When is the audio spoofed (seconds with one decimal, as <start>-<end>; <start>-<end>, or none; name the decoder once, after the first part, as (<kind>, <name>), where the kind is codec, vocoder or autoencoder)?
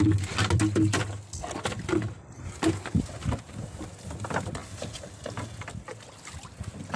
none